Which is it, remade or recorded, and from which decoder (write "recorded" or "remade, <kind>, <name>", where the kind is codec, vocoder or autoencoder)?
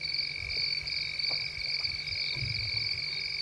recorded